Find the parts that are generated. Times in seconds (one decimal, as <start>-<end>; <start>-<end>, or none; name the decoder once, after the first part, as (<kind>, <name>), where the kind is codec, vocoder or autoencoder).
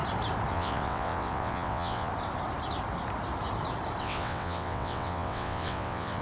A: 0.5-2.1 (vocoder, WaveNeXt); 4.0-6.2